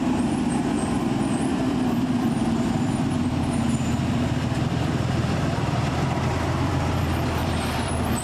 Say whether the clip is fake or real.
fake